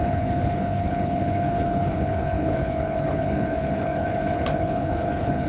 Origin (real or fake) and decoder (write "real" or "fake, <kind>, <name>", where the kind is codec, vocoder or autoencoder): fake, codec, HILCodec